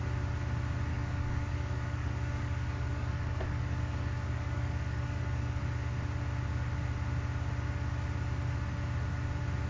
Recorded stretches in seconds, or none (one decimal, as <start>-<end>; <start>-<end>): 0.0-0.9; 5.6-9.7